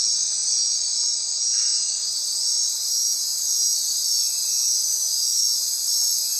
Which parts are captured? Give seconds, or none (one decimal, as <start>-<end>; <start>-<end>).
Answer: 0.0-4.9; 5.5-6.4